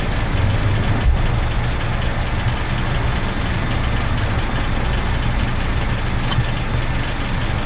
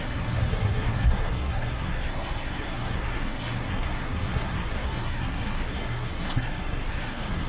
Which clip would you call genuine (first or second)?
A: first